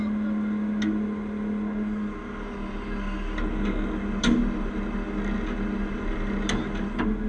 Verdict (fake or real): real